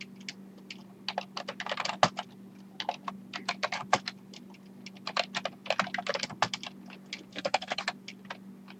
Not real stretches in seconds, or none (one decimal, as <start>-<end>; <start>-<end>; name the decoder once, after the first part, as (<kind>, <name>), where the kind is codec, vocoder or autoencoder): 7.3-7.8 (codec, SNAC)